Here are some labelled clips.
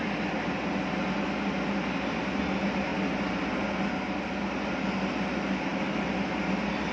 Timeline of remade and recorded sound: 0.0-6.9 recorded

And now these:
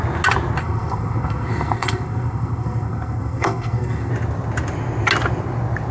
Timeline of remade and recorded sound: 0.0-0.6 recorded; 0.6-4.1 remade; 4.1-5.9 recorded